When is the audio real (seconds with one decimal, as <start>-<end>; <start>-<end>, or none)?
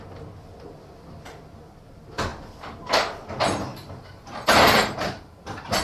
0.0-3.7